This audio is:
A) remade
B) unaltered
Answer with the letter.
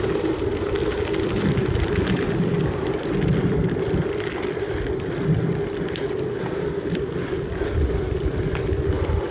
B